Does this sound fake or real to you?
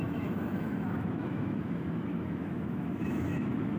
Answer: fake